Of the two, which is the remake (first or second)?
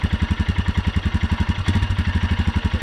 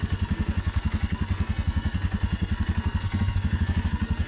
second